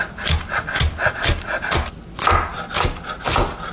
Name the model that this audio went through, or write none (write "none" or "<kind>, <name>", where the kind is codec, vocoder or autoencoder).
none